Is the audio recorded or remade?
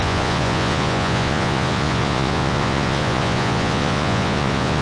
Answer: remade